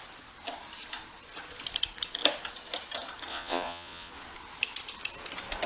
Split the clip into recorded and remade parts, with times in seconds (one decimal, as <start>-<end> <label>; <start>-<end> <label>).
0.0-3.3 recorded; 3.3-4.1 remade; 4.1-5.7 recorded